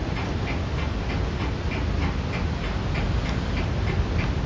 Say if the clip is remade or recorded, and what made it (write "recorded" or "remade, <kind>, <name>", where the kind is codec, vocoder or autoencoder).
recorded